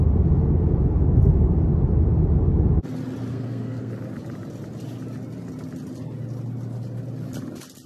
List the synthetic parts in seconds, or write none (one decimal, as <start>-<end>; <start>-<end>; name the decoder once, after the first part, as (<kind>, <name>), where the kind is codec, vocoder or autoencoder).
3.3-3.9 (codec, SNAC)